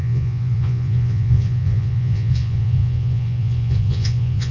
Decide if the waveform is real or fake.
fake